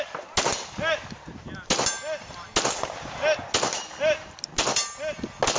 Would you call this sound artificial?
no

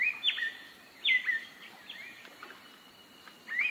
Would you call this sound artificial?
no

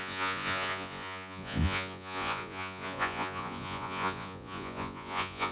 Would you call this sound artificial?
yes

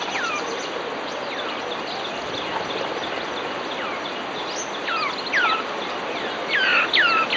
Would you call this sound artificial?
no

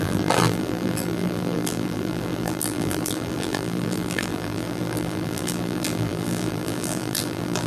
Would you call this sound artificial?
yes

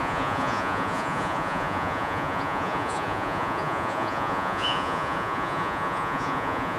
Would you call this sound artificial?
yes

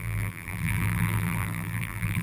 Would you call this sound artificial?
yes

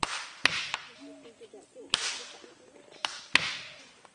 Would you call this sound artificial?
no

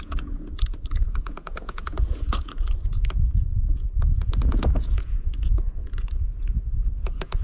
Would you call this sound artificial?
yes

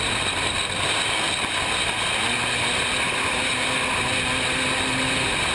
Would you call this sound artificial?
no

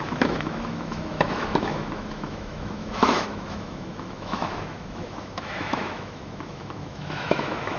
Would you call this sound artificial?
yes